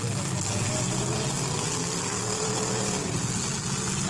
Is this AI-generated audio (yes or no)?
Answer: no